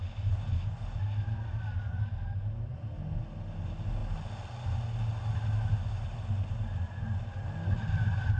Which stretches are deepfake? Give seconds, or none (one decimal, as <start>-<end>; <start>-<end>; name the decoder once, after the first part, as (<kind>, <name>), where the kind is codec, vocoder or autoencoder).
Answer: none